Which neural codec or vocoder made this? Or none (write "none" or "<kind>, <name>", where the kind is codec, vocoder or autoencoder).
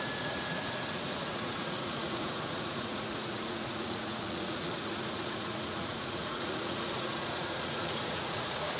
vocoder, Vocos